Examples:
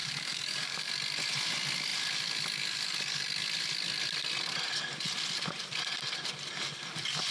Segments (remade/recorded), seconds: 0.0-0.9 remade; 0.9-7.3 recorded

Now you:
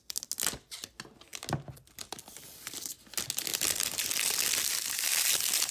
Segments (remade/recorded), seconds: 0.0-5.7 recorded

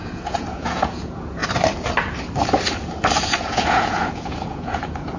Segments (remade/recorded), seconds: 0.0-1.4 remade; 1.4-3.4 recorded; 3.4-5.2 remade